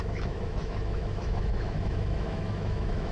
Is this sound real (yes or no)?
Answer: no